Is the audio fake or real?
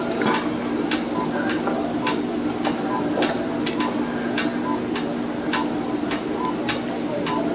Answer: real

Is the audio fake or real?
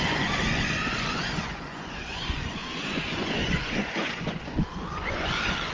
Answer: fake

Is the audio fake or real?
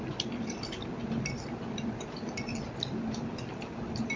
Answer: real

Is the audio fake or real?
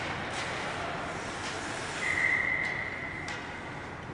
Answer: real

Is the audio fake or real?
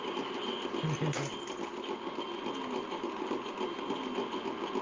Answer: real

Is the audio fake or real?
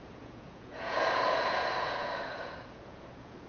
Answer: fake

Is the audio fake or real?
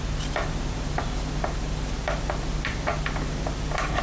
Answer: fake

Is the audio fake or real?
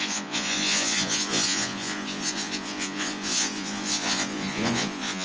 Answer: fake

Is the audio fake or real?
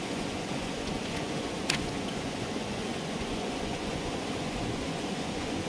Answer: fake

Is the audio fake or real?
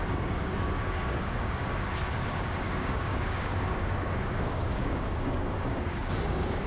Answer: fake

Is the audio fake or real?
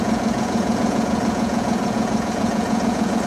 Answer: fake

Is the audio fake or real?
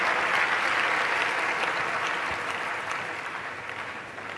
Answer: real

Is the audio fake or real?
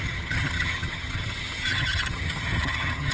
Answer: fake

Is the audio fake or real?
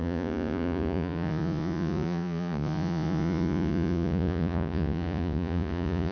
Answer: fake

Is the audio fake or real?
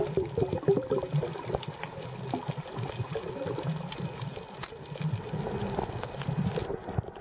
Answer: real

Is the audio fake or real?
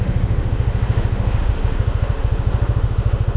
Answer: fake